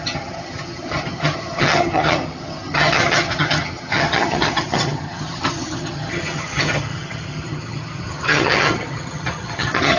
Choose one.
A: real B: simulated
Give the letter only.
B